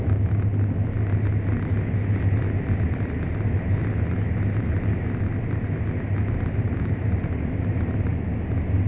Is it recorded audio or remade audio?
recorded